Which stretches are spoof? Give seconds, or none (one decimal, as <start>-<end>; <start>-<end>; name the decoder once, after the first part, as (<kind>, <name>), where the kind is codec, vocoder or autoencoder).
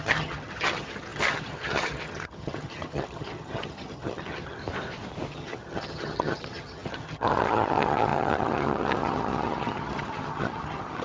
0.0-4.6 (vocoder, HiFi-GAN); 5.3-11.0